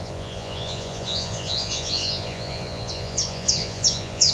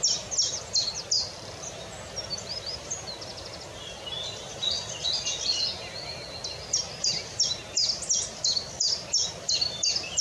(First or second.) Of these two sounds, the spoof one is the first